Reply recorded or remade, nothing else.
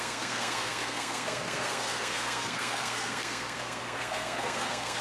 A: remade